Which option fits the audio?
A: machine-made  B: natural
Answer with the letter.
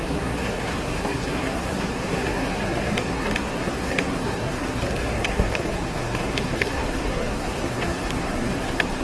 A